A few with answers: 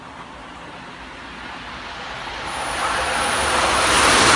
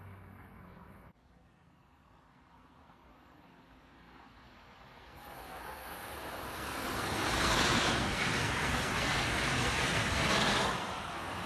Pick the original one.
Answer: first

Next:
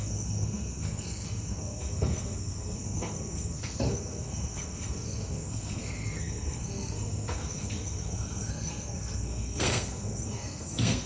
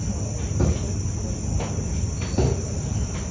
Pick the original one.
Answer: second